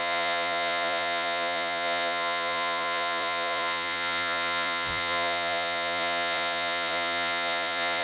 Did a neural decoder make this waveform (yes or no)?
yes